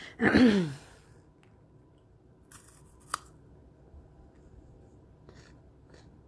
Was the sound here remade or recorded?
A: recorded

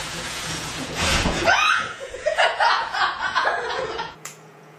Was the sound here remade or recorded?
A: remade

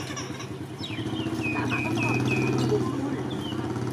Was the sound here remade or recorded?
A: recorded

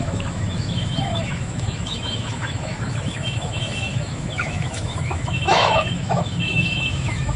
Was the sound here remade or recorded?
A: remade